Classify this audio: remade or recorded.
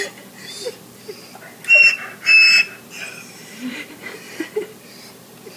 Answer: recorded